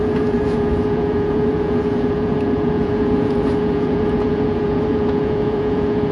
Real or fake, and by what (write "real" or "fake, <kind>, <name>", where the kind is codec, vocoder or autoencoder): fake, vocoder, Vocos